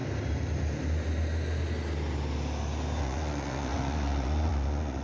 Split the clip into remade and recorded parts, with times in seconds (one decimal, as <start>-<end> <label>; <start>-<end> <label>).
0.0-3.0 recorded; 3.0-5.0 remade